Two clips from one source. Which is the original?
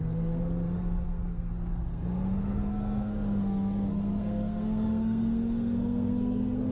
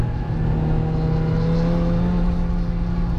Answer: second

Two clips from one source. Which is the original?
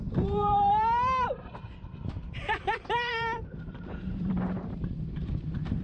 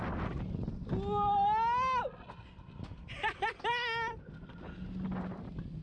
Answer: second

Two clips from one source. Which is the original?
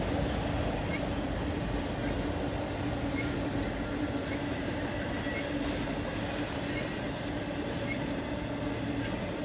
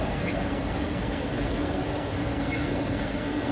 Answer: first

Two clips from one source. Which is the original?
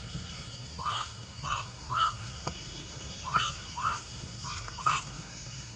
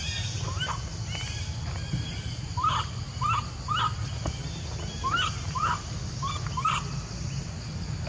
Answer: second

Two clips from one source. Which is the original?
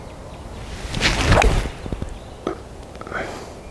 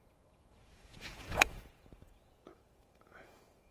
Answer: first